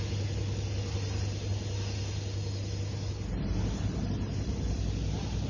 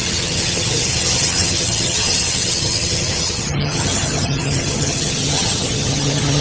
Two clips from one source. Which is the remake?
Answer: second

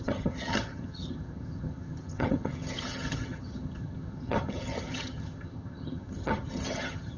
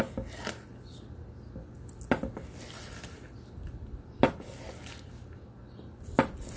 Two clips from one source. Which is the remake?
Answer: first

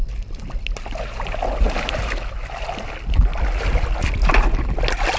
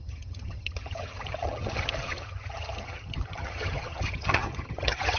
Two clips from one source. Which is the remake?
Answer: second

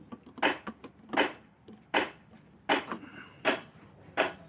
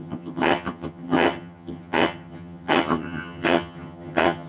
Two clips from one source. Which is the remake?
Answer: second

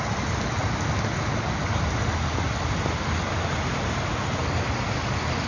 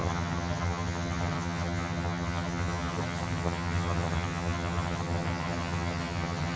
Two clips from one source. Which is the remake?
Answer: second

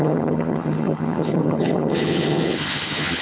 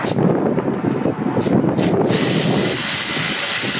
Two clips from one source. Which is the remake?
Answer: first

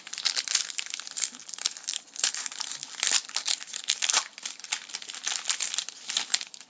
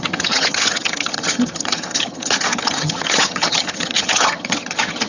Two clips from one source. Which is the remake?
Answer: second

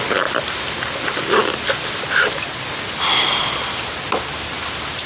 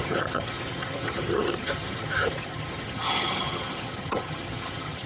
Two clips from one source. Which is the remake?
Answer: second